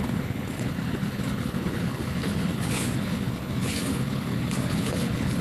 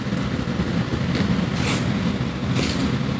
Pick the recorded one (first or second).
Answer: second